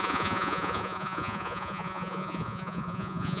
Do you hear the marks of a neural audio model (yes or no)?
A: yes